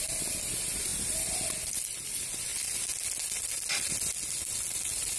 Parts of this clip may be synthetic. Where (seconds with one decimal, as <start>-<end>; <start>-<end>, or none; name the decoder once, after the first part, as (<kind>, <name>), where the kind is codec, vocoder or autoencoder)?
none